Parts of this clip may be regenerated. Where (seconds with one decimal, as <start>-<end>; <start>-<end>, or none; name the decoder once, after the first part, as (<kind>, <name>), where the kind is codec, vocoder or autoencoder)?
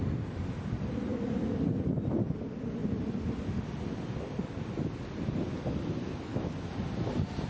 1.1-1.7 (vocoder, BigVGAN v2)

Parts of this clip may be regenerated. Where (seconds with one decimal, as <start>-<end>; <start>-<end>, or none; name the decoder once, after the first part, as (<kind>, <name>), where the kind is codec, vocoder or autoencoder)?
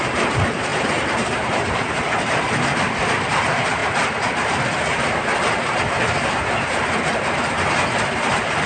0.0-8.7 (vocoder, BigVGAN v2)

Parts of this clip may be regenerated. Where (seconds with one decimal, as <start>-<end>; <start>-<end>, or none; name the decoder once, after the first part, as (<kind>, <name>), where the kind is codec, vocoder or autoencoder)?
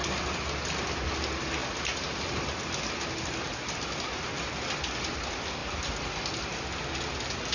none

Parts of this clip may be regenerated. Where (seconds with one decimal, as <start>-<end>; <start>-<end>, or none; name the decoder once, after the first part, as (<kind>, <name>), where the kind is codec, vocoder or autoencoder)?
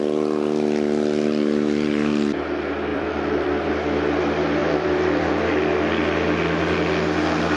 2.9-3.7 (vocoder, BigVGAN v2); 4.6-5.3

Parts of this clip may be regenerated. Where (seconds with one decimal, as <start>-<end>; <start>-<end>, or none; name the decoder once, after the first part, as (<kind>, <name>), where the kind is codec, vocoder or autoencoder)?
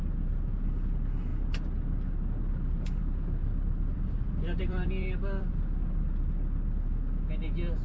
3.4-6.0 (vocoder, BigVGAN v2)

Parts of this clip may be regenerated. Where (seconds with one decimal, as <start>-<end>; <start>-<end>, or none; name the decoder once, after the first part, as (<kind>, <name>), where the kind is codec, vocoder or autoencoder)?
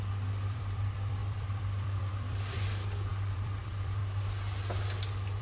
0.0-4.0 (vocoder, BigVGAN v2)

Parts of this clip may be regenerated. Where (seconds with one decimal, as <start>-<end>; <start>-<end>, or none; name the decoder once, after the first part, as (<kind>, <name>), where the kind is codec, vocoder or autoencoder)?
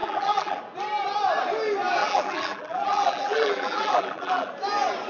0.0-0.6 (vocoder, BigVGAN v2); 2.0-4.5